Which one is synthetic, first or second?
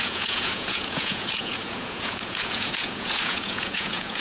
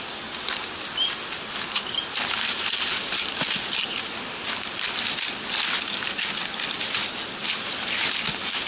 first